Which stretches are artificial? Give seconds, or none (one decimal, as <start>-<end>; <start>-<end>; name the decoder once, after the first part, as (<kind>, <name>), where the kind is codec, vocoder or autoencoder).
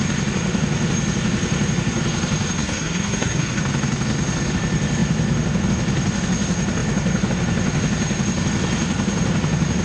2.6-3.6 (codec, SNAC)